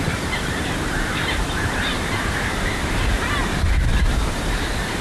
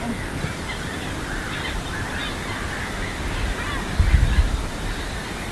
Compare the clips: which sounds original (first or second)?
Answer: second